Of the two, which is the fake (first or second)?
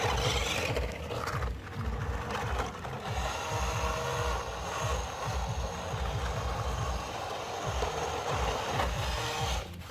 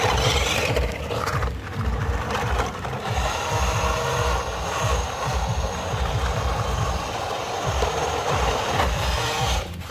second